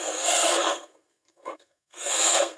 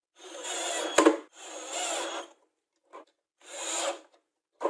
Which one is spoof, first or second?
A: first